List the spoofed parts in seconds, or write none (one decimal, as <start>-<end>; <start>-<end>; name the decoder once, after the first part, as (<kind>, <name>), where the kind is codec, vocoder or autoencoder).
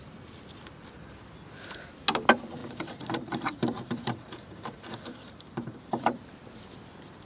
2.6-6.3 (vocoder, BigVGAN v2)